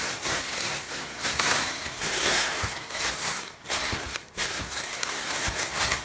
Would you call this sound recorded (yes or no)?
no